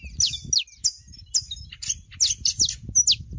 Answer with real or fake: real